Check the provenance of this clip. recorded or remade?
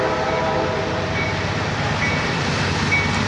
recorded